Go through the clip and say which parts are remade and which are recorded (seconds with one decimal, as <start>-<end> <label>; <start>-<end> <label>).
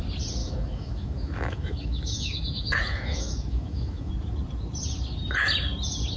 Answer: 0.0-0.4 recorded; 0.4-4.1 remade; 4.1-6.2 recorded